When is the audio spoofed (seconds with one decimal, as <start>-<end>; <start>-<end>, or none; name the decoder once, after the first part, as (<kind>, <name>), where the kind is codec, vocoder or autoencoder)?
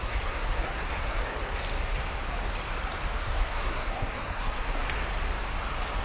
0.0-1.2 (codec, SNAC); 3.2-4.8